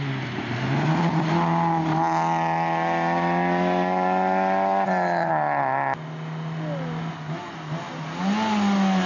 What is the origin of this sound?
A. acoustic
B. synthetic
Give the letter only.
A